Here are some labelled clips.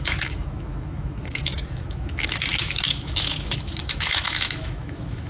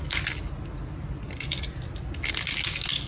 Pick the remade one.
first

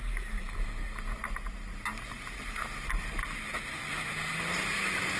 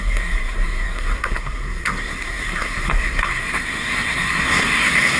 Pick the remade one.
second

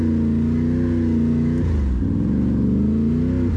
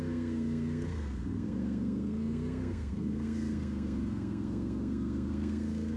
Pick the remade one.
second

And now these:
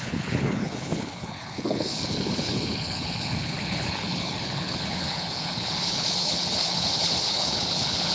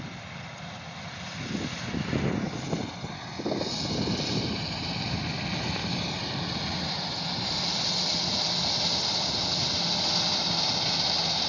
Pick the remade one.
first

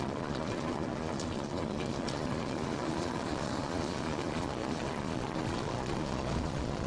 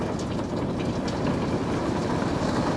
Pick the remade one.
first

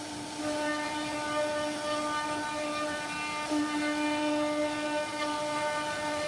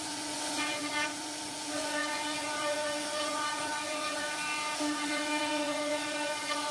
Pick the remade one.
second